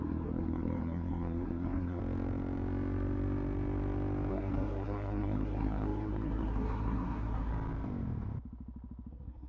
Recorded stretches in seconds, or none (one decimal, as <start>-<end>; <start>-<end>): 2.0-4.3; 7.5-9.1